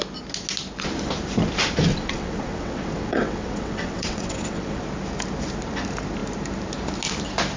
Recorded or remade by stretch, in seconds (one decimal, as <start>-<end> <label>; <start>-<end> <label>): 0.0-1.9 recorded; 1.9-4.8 remade; 4.8-7.6 recorded